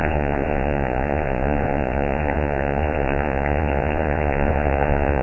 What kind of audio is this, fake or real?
fake